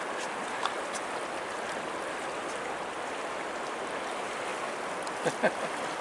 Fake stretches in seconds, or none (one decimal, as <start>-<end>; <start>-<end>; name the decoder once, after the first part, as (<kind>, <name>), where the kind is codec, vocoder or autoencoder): none